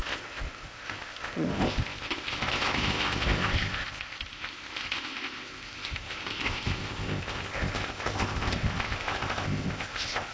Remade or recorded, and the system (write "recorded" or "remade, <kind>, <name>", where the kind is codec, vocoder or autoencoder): remade, codec, ZipCodec